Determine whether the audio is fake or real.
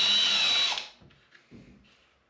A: real